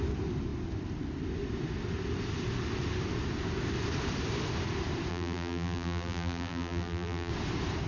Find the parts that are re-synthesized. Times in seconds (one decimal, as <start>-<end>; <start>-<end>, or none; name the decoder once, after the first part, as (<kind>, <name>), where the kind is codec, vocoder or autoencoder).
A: 5.1-7.3 (vocoder, BigVGAN v2)